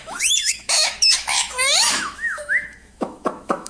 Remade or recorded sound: remade